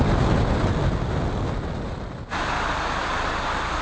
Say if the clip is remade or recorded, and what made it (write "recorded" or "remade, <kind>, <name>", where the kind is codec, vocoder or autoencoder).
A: recorded